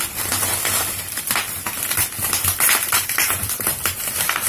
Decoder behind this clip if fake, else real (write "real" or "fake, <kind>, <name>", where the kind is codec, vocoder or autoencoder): fake, vocoder, BigVGAN v2